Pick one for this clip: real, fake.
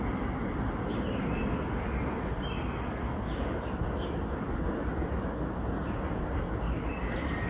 real